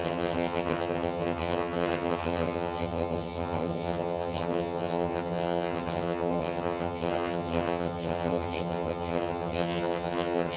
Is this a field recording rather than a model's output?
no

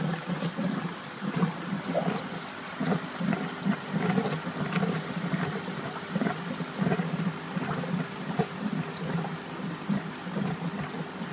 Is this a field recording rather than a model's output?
yes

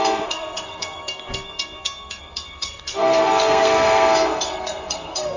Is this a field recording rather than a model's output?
no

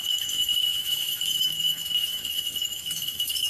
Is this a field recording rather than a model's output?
no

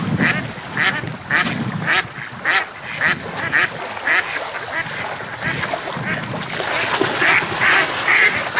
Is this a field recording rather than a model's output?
yes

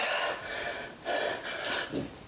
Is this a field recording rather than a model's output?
yes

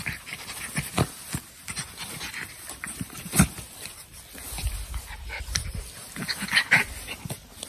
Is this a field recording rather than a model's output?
yes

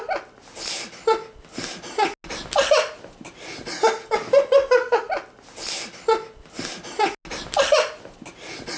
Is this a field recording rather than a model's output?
yes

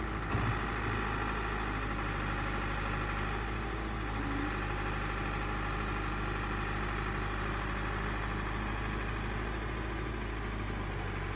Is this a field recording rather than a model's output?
yes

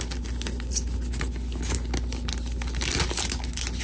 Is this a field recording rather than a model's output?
yes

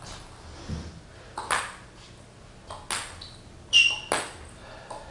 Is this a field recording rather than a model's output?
yes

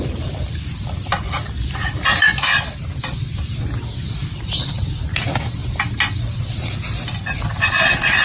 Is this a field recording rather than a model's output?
no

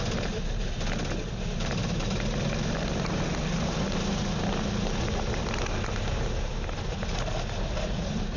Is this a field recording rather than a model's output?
yes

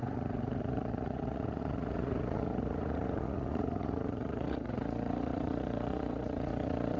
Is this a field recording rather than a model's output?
no